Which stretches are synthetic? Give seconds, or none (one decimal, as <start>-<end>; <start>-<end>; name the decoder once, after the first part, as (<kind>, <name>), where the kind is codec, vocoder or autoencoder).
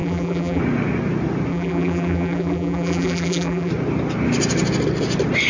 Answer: 0.0-0.6 (vocoder, BigVGAN v2); 1.5-3.7